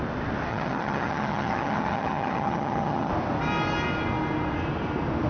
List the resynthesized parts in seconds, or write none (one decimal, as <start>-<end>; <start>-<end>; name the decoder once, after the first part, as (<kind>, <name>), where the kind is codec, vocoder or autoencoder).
0.5-3.1 (vocoder, HiFi-GAN)